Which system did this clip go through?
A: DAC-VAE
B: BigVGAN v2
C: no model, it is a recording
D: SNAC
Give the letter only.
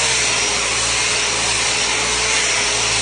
C